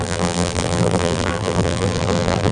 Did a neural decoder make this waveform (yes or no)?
yes